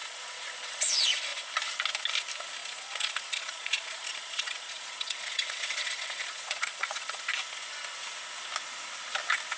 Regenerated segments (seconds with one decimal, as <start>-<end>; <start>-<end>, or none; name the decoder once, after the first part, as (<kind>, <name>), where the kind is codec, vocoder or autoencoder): 0.0-0.9 (vocoder, Vocos); 2.6-7.2